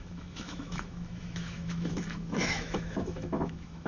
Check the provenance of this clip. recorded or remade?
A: remade